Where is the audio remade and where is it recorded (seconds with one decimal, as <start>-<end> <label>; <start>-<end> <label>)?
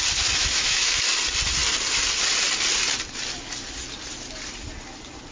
0.0-0.4 recorded; 0.4-1.0 remade; 1.0-5.3 recorded